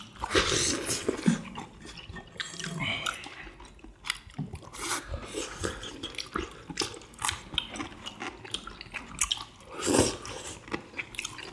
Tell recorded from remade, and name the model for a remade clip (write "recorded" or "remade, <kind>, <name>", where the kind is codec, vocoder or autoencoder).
recorded